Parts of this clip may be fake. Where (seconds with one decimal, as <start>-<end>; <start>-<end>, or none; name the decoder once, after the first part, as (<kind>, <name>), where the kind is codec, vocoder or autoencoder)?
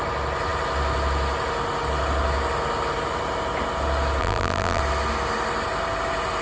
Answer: 4.2-4.8 (vocoder, BigVGAN v2)